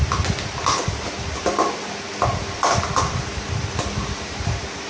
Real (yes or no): yes